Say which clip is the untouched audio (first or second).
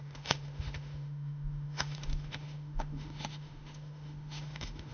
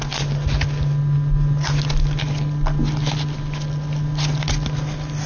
second